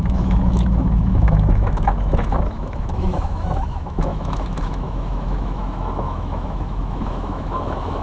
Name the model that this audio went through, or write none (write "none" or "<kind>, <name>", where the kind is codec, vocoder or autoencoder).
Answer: autoencoder, DAC-VAE